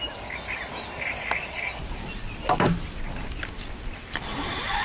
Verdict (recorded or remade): recorded